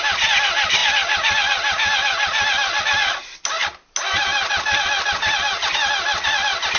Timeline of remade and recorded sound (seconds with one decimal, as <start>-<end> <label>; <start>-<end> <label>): 0.0-6.8 recorded